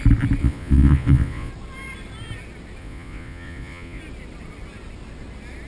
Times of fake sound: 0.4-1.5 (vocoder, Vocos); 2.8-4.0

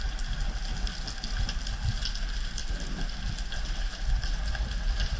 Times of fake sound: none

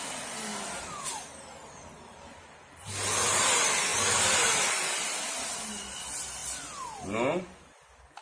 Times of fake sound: none

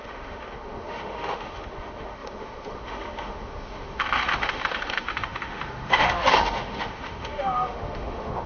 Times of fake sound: 0.0-8.5 (autoencoder, DAC-VAE)